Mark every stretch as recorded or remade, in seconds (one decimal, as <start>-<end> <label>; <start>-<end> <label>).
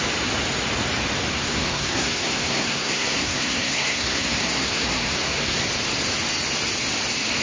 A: 0.0-1.3 recorded; 1.3-5.7 remade; 5.7-7.4 recorded